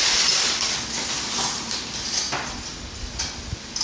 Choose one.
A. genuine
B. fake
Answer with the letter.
A